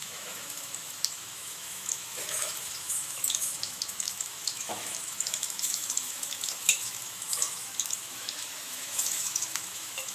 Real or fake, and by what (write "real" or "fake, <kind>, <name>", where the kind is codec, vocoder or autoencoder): fake, autoencoder, DAC-VAE